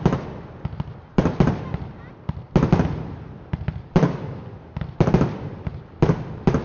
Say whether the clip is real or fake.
real